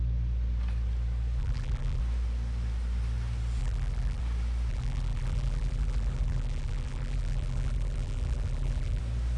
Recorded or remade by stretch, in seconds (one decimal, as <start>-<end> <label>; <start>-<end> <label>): 0.0-1.4 recorded; 1.4-2.0 remade; 2.0-3.6 recorded; 3.6-4.2 remade; 4.2-4.7 recorded; 4.7-9.0 remade; 9.0-9.4 recorded